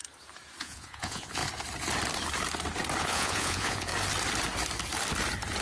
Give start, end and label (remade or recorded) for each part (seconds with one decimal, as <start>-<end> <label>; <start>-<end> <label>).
0.0-0.6 recorded; 0.6-1.4 remade; 1.4-3.0 recorded; 3.0-3.9 remade; 3.9-5.6 recorded